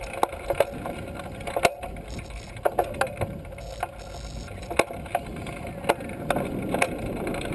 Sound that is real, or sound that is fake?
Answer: real